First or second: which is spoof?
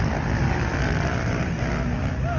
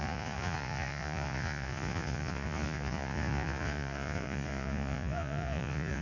second